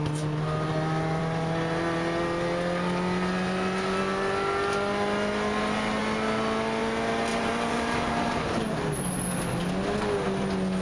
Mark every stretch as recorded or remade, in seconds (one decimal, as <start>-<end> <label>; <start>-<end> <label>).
0.0-7.3 recorded; 7.3-9.1 remade; 9.1-10.8 recorded